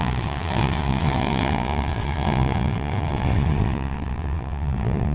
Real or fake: fake